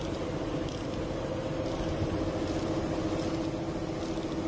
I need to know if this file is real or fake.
real